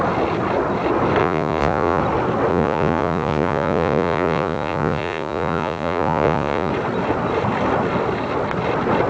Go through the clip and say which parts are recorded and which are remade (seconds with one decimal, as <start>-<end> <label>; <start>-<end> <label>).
0.0-1.2 recorded; 1.2-2.0 remade; 2.0-2.5 recorded; 2.5-6.7 remade; 6.7-9.1 recorded